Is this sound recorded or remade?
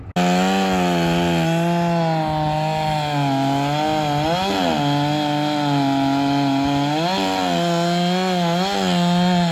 recorded